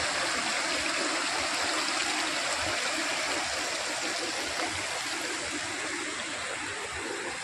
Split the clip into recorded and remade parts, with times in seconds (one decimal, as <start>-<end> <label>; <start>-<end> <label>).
0.0-7.4 recorded